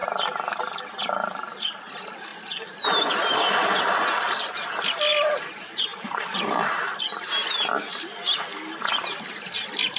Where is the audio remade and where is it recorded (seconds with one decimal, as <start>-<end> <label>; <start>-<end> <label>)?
0.0-1.1 recorded; 1.1-10.0 remade